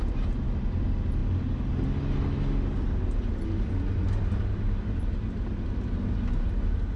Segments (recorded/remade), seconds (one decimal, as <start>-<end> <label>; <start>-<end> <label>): 0.0-7.0 recorded